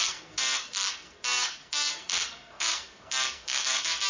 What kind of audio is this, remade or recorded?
remade